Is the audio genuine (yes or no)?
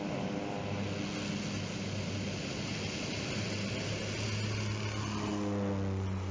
yes